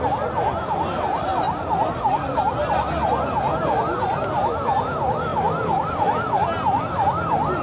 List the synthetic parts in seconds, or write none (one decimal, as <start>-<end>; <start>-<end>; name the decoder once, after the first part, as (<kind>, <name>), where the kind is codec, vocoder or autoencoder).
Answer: none